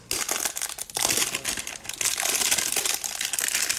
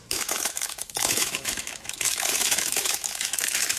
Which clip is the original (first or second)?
first